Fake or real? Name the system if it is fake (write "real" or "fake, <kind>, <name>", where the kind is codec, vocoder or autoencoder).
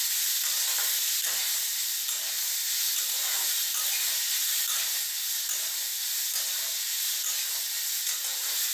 real